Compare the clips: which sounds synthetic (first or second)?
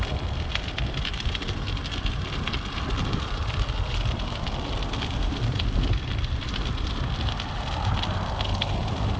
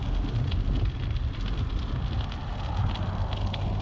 first